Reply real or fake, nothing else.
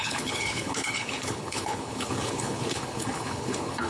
fake